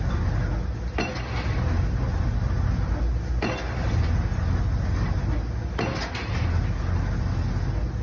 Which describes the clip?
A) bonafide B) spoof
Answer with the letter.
A